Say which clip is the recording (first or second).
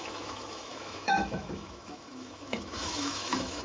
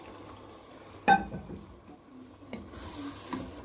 second